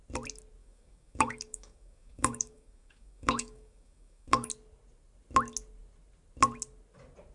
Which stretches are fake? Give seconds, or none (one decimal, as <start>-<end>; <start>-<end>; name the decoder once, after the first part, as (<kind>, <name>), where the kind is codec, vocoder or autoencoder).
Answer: 0.6-4.5 (codec, DAC)